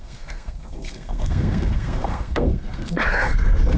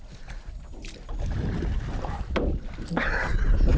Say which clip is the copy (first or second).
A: first